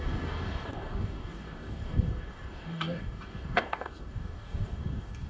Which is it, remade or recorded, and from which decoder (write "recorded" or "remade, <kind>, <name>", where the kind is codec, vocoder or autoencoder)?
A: remade, codec, DAC